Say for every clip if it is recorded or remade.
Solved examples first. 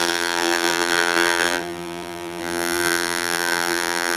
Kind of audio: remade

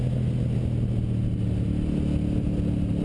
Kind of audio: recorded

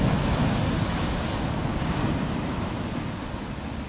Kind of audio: recorded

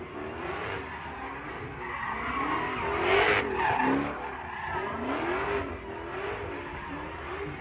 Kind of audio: recorded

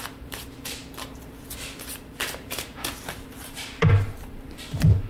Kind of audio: remade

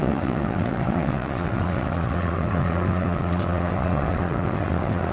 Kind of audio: remade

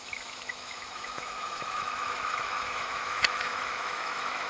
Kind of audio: remade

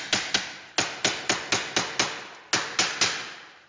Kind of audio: recorded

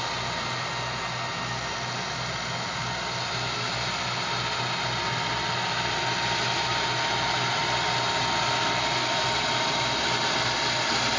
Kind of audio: recorded